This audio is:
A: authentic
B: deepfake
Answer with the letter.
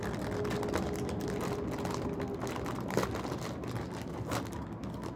A